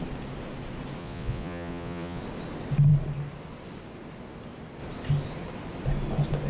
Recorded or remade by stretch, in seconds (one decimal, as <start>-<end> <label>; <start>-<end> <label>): 0.0-1.0 recorded; 1.0-2.2 remade; 2.2-6.5 recorded